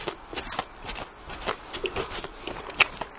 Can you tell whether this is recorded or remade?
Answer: recorded